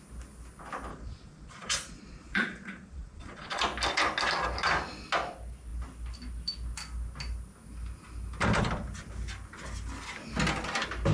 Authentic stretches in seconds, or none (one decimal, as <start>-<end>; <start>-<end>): 0.0-0.9; 3.6-11.1